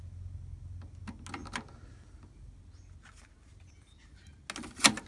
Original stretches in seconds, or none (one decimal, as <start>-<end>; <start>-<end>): 0.0-5.1